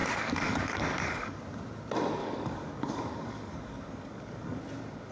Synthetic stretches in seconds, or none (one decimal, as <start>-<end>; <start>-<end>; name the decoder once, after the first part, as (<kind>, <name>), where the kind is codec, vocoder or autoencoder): 0.0-1.4 (codec, DAC); 2.2-4.6